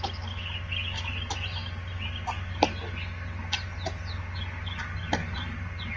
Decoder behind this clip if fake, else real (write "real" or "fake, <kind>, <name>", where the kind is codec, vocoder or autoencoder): real